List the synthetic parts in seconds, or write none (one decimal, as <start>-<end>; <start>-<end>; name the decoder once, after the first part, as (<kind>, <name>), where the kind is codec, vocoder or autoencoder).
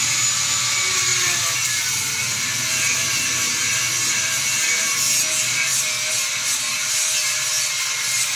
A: none